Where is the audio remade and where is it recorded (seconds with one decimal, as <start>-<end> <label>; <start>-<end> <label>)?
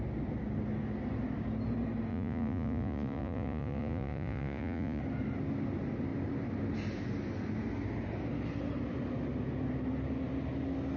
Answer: 0.0-2.1 recorded; 2.1-5.0 remade; 5.0-11.0 recorded